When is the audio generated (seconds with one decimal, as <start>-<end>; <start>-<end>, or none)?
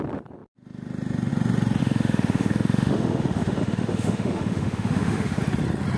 1.8-5.4